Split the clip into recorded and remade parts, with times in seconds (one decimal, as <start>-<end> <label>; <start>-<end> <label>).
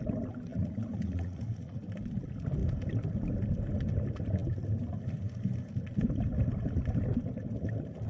0.0-0.5 recorded; 0.5-1.8 remade; 1.8-8.1 recorded